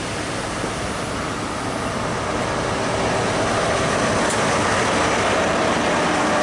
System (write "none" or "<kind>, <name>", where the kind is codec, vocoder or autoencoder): none